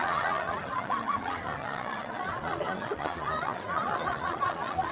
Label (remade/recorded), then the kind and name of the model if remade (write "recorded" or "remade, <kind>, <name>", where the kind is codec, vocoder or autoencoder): remade, vocoder, Vocos